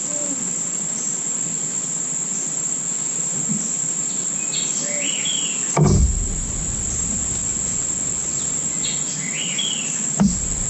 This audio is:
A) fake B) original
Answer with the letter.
B